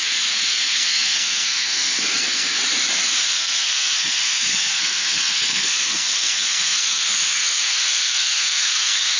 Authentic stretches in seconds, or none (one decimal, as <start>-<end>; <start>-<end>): 2.6-3.1